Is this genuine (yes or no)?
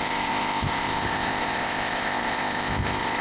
no